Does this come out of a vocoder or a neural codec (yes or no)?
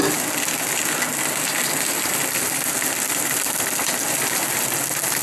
no